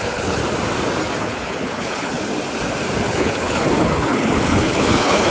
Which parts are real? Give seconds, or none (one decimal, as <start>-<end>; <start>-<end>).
0.4-1.2; 2.3-3.0